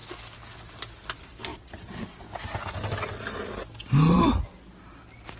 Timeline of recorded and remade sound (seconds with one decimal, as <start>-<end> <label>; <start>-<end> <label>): 0.0-5.4 recorded